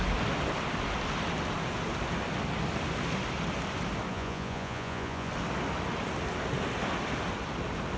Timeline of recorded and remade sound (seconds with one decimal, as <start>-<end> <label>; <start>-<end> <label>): 0.0-4.1 recorded; 4.1-5.3 remade; 5.3-8.0 recorded